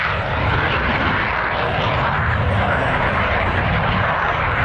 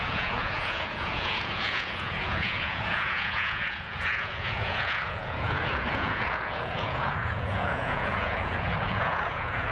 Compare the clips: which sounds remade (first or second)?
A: second